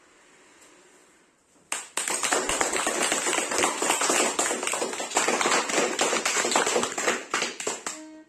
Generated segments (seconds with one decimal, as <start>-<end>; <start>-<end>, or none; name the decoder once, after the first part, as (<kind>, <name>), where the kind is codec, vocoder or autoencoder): none